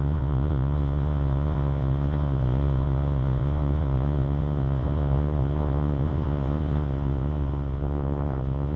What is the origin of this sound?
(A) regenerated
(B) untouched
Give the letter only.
A